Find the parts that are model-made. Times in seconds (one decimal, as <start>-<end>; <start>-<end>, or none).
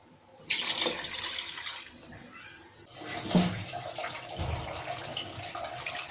none